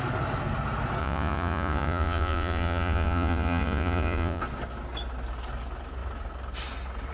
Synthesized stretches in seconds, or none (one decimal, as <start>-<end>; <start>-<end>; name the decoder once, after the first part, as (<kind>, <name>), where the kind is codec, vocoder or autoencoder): 1.0-4.4 (vocoder, Vocos)